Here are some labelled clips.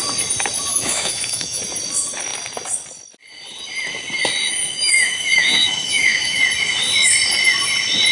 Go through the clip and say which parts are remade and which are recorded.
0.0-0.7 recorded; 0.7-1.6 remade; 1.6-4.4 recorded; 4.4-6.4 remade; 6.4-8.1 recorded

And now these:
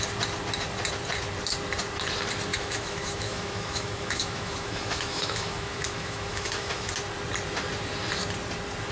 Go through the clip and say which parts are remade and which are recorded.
0.0-2.5 recorded; 2.5-6.9 remade; 6.9-8.9 recorded